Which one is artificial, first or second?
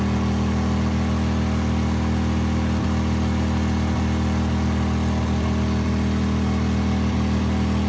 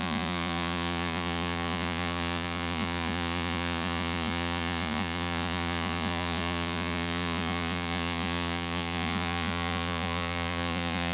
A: second